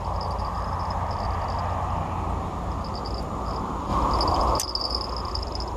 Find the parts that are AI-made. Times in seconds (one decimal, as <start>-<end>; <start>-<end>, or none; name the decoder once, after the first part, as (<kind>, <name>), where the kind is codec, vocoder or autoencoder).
none